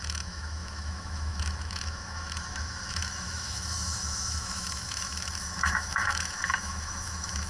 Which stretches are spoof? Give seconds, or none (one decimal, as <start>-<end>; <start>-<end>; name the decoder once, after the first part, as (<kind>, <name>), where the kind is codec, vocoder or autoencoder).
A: 0.0-7.5 (autoencoder, DAC-VAE)